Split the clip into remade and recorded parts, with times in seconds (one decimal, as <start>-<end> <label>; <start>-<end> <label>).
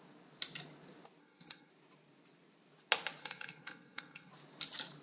0.0-1.2 recorded; 1.2-1.7 remade; 1.7-3.2 recorded; 3.2-4.3 remade; 4.3-5.0 recorded